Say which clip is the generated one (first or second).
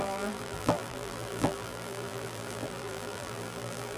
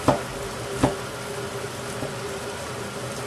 first